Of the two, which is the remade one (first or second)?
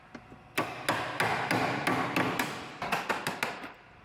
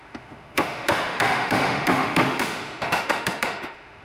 second